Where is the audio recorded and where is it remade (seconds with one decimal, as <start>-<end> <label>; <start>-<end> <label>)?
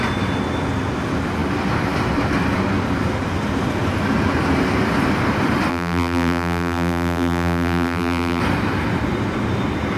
0.0-5.7 recorded; 5.7-8.4 remade; 8.4-10.0 recorded